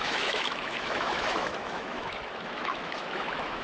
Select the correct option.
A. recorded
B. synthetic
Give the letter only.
B